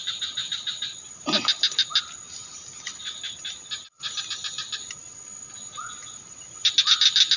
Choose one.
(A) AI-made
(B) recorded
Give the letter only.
B